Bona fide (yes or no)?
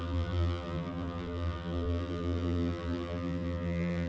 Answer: no